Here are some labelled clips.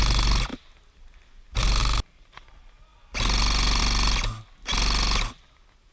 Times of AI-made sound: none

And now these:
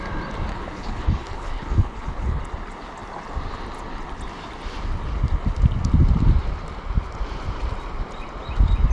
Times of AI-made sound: 0.5-2.4 (codec, HILCodec)

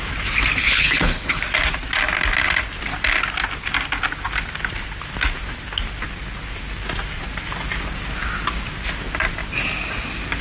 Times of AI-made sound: 0.6-1.4 (codec, HILCodec)

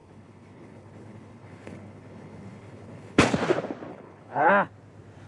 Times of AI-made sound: 0.0-3.2 (codec, HILCodec); 3.9-4.5

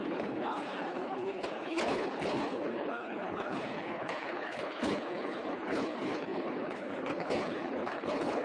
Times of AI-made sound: 0.0-8.4 (codec, HILCodec)

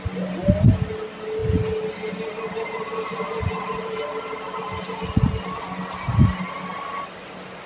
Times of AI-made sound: none

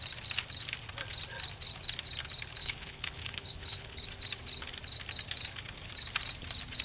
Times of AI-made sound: 2.6-4.0 (codec, HILCodec)

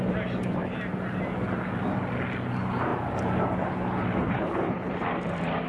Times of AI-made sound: 4.2-4.9 (codec, HILCodec)